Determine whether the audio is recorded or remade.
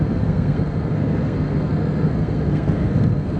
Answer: remade